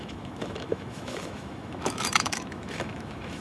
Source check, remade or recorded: remade